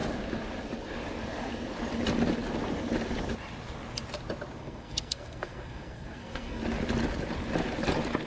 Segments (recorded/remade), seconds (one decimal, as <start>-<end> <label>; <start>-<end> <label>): 0.0-4.6 recorded; 4.6-6.6 remade; 6.6-8.3 recorded